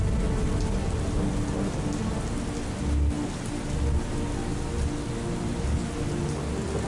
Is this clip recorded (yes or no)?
yes